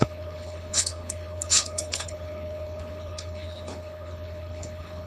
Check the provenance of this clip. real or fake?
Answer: fake